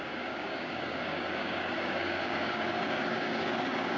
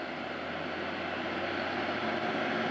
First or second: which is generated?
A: first